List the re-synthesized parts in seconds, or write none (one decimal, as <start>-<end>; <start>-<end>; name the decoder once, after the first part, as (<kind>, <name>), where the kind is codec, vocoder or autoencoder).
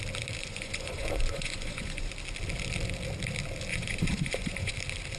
0.4-2.1 (vocoder, Vocos); 3.7-4.7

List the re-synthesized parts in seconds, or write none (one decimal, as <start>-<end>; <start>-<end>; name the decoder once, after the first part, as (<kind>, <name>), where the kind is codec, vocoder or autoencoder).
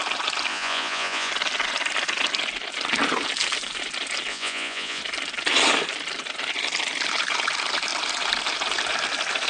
0.5-1.3 (vocoder, Vocos); 4.3-5.0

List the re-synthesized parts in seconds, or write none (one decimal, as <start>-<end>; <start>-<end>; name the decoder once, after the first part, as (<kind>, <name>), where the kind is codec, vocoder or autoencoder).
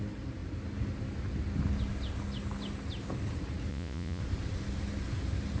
3.7-4.2 (vocoder, Vocos)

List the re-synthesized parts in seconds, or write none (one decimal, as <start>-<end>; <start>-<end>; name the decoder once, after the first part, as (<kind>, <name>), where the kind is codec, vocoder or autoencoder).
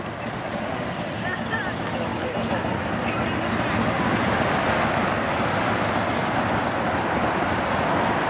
none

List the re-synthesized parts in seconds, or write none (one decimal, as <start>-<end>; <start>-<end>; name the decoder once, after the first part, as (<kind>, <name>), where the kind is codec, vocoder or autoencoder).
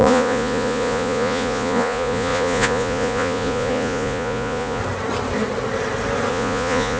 0.0-4.8 (vocoder, Vocos); 6.3-7.0